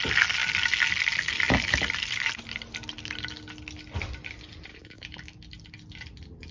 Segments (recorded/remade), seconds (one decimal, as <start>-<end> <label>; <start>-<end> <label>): 0.0-4.7 recorded; 4.7-5.4 remade; 5.4-6.5 recorded